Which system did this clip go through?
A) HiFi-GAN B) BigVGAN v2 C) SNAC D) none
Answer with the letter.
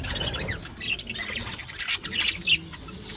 D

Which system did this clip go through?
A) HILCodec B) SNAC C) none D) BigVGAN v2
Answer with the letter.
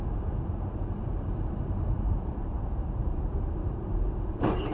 D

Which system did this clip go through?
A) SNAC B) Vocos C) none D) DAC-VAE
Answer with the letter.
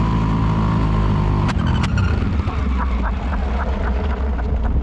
C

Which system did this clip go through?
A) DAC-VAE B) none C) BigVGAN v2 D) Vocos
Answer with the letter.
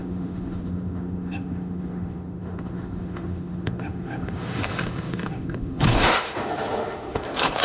A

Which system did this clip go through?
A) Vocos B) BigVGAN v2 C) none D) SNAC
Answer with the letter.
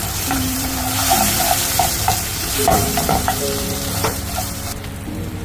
B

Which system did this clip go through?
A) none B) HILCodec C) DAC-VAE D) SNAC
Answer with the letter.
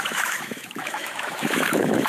C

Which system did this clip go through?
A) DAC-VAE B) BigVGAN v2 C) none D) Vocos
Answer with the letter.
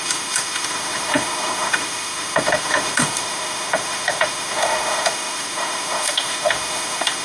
A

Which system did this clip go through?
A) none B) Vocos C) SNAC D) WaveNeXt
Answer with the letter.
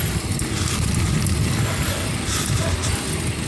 A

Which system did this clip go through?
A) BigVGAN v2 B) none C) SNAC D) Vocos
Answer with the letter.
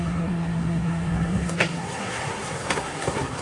C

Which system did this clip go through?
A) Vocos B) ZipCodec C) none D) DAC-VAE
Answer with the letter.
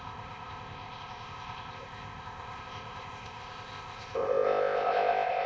B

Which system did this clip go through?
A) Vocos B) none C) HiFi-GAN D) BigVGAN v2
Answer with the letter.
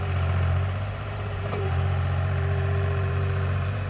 D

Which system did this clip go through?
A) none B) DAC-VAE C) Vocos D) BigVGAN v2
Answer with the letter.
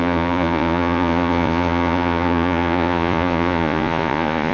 C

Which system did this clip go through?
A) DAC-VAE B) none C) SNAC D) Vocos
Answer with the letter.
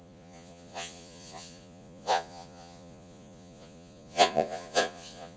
D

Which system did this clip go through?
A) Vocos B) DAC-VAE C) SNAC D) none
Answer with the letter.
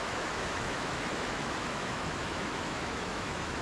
B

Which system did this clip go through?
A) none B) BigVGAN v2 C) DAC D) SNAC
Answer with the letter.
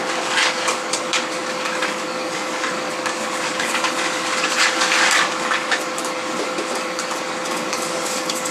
C